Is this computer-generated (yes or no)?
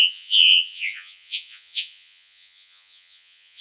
yes